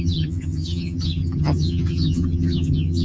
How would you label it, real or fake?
fake